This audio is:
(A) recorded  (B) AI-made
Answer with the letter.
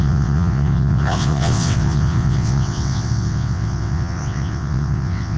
B